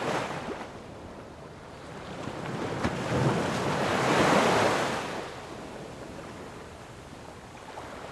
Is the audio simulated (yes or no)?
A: no